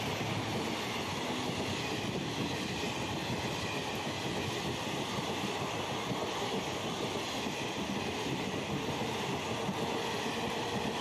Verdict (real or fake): real